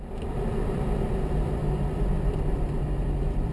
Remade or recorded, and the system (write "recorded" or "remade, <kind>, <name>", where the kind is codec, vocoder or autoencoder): remade, vocoder, BigVGAN v2